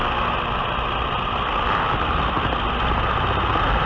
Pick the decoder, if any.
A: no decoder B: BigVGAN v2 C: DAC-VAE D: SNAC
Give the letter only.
A